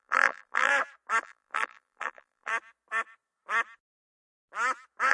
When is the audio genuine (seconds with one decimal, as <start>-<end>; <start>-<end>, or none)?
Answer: 0.7-1.2; 2.5-5.1